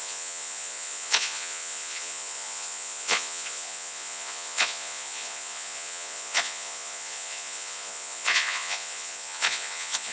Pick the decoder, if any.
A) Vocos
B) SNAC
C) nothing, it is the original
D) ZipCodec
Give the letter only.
A